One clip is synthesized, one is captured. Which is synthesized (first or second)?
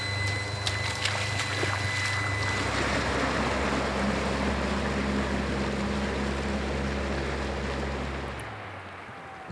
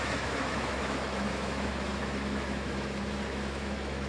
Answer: second